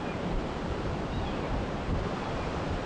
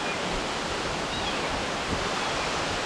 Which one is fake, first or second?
first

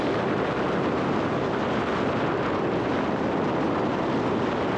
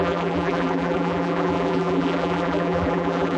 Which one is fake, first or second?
second